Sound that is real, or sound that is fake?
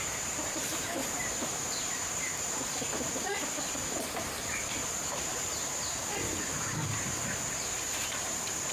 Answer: fake